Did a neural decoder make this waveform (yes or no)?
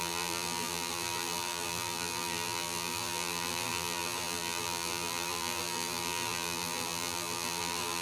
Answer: yes